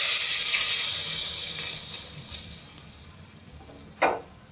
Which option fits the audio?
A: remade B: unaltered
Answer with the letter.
B